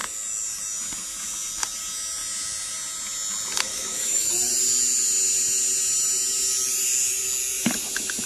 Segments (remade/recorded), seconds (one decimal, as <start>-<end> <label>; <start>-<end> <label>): 0.0-3.7 recorded; 3.7-4.3 remade; 4.3-8.3 recorded